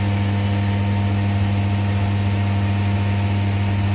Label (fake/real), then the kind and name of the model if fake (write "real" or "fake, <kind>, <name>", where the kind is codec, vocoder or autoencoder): real